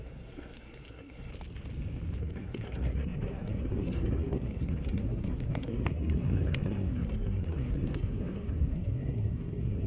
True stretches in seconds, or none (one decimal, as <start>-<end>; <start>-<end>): 1.3-2.2